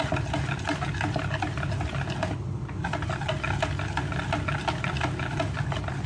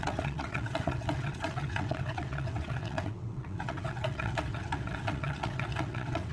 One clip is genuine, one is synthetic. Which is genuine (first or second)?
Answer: first